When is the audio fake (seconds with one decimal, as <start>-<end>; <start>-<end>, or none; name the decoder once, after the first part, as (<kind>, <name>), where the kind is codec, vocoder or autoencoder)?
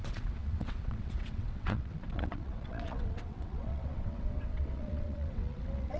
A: 0.0-6.0 (vocoder, WaveNeXt)